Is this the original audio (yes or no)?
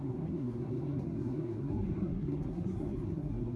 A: no